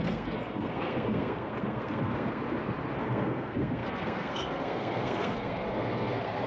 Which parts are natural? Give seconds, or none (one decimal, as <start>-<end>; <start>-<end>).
2.4-3.0